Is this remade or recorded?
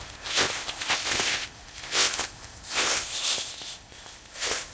remade